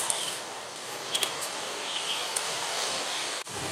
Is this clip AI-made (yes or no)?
yes